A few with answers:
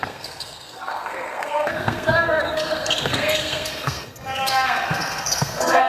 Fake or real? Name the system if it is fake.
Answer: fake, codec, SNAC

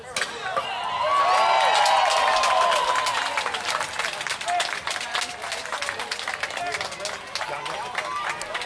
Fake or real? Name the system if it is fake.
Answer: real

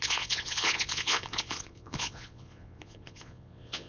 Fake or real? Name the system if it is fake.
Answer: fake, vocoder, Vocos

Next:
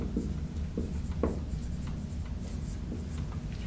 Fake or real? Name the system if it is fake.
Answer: real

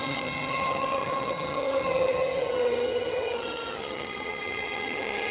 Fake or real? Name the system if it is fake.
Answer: fake, vocoder, HiFi-GAN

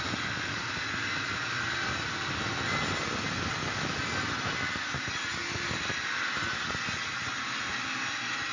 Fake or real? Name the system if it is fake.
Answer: real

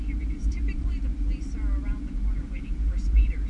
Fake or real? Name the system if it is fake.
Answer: fake, vocoder, BigVGAN v2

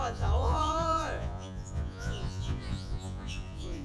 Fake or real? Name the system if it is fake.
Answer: fake, vocoder, Vocos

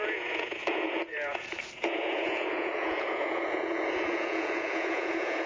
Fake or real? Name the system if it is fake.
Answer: fake, vocoder, Vocos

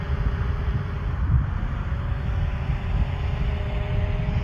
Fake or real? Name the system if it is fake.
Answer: real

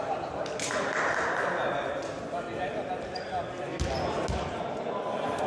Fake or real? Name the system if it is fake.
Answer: real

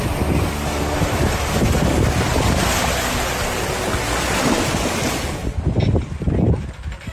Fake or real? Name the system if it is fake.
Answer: real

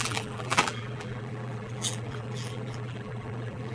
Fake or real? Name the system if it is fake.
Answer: fake, vocoder, BigVGAN v2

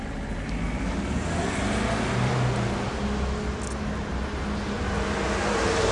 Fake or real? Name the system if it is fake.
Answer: real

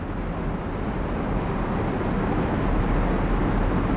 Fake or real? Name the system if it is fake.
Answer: real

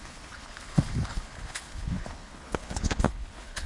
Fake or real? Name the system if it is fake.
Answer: fake, codec, HILCodec